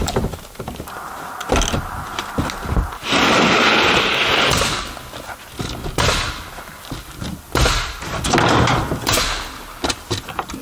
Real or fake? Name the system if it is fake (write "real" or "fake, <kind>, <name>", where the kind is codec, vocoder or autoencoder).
real